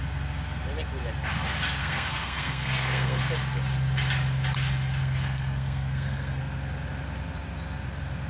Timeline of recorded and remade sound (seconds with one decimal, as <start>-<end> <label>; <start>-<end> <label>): 0.0-1.8 recorded; 1.8-3.2 remade; 3.2-5.0 recorded; 5.0-6.4 remade; 6.4-8.3 recorded